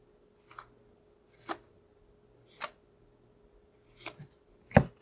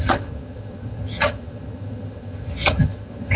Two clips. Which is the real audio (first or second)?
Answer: first